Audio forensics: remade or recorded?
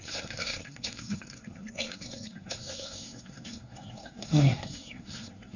remade